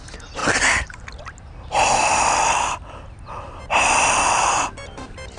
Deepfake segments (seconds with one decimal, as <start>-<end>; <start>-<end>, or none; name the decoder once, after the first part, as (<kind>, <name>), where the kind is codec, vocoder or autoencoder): none